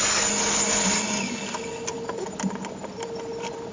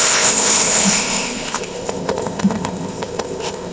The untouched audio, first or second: first